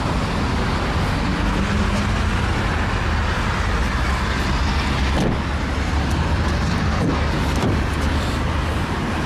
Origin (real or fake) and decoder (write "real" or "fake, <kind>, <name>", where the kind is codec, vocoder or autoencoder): real